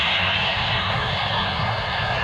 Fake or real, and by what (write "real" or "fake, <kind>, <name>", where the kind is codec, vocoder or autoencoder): fake, codec, SNAC